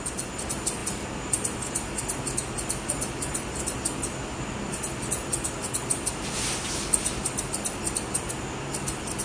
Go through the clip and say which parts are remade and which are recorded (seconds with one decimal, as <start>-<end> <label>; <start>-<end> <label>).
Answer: 0.0-9.2 recorded